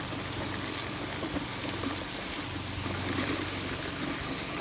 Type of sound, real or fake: real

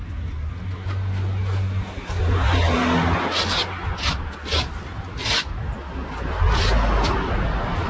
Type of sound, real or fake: real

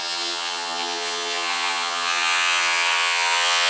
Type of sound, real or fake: fake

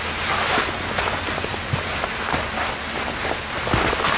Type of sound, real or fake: real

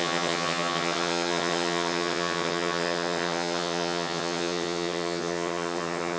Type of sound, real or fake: fake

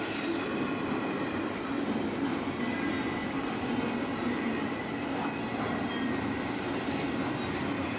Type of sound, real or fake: real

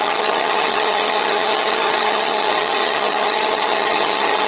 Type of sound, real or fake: fake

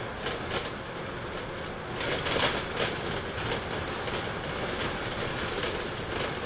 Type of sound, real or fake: real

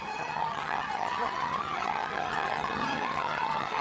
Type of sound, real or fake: fake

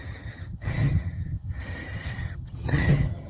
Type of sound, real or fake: fake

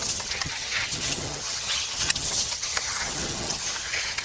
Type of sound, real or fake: fake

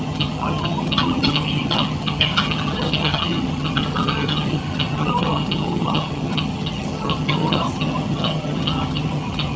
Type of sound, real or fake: fake